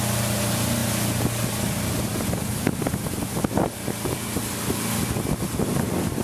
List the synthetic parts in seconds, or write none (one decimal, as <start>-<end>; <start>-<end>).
none